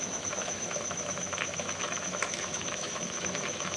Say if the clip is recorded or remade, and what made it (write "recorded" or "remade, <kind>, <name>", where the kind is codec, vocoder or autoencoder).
remade, autoencoder, DAC-VAE